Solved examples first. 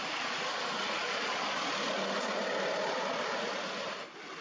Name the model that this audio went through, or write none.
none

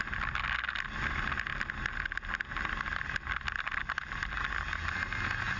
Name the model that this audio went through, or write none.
none